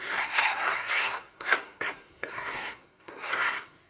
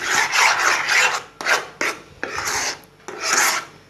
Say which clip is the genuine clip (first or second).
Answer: second